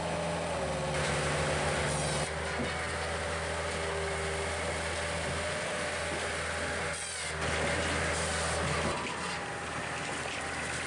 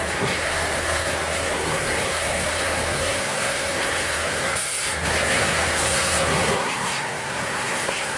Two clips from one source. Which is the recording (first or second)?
first